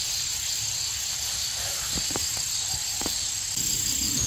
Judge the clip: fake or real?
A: fake